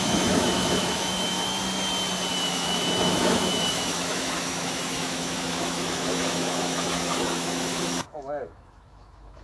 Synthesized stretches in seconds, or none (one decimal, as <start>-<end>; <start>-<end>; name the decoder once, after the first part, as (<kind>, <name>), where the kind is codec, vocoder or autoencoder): 0.0-1.6 (autoencoder, DAC-VAE); 2.3-9.4